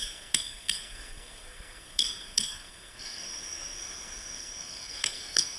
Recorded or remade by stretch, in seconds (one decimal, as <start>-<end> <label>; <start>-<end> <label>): 0.0-5.6 remade